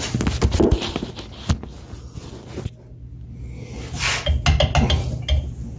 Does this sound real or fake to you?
real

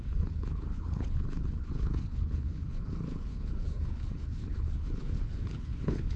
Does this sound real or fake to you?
fake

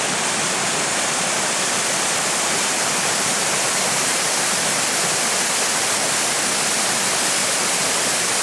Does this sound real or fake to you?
real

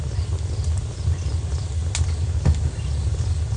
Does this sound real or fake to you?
real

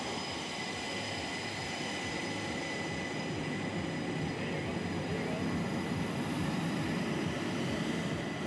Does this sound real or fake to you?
real